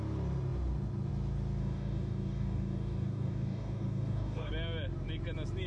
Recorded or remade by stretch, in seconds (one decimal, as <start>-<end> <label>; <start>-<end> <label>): 0.0-1.6 recorded; 1.6-4.5 remade; 4.5-5.7 recorded